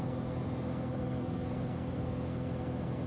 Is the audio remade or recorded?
remade